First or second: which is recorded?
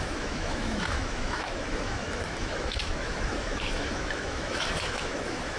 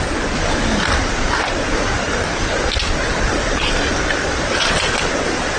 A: second